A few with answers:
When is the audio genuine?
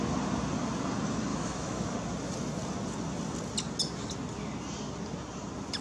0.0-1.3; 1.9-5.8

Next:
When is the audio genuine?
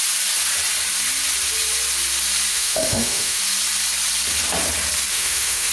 0.0-2.5; 3.4-5.1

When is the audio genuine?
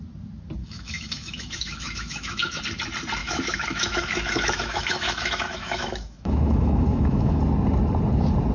0.0-0.6; 2.6-3.2; 7.4-8.5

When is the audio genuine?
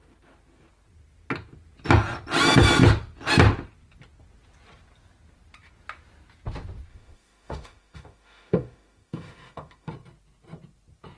0.0-6.9; 9.9-11.2